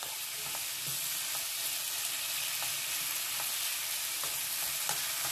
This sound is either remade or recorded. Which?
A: recorded